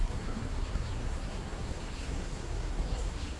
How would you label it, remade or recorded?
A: remade